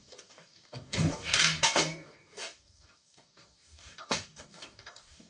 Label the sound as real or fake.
fake